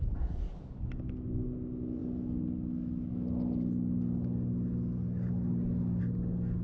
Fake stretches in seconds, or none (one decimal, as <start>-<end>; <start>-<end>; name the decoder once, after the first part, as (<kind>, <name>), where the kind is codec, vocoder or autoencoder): none